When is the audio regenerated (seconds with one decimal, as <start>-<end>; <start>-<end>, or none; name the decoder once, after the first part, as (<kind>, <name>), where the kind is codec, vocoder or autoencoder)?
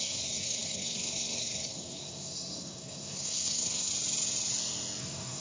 0.0-3.9 (codec, SNAC); 5.0-5.4